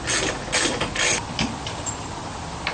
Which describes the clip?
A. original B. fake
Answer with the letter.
A